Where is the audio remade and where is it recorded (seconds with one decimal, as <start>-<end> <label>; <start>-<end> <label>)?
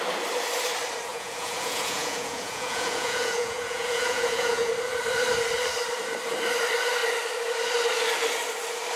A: 0.0-1.1 recorded; 1.1-4.7 remade; 4.7-9.0 recorded